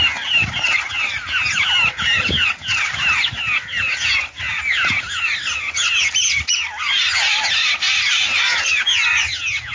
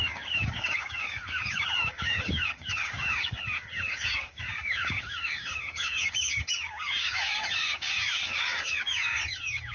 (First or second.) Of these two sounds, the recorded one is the first